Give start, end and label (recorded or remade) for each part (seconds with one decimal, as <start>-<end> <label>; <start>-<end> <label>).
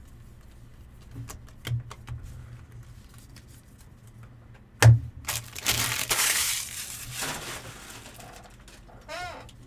0.0-6.0 recorded; 6.0-6.5 remade; 6.5-9.7 recorded